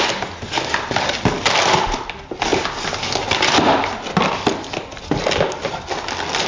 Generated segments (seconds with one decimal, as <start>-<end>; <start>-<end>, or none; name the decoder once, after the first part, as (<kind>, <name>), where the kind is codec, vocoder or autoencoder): none